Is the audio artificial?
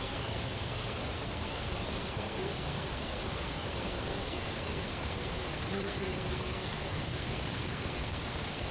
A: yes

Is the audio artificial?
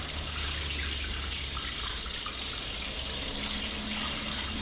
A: no